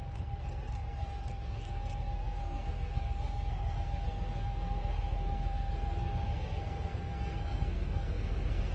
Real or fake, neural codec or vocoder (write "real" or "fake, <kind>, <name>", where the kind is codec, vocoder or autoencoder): fake, codec, SNAC